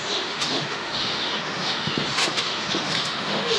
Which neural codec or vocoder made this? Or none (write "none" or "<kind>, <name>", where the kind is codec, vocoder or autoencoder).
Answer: autoencoder, DAC-VAE